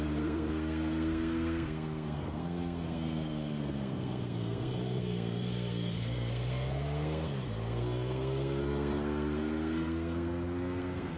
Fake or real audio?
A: fake